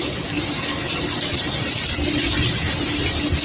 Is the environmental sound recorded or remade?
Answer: recorded